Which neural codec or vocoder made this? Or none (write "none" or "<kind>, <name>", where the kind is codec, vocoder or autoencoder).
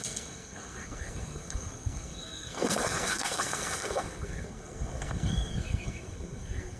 codec, SNAC